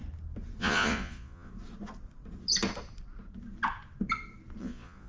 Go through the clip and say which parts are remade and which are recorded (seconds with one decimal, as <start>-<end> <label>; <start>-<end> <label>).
0.0-0.6 recorded; 0.6-1.5 remade; 1.5-4.6 recorded; 4.6-5.1 remade